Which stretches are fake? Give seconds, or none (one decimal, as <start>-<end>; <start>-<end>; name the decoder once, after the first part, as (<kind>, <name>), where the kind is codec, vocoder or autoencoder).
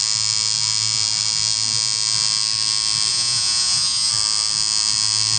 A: 3.1-4.1 (vocoder, Vocos)